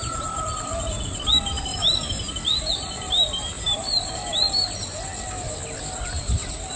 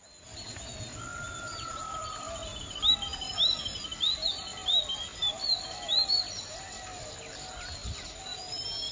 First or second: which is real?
second